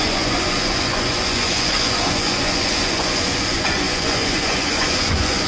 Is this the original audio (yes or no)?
no